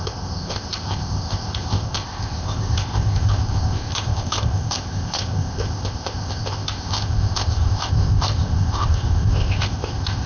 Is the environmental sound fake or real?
fake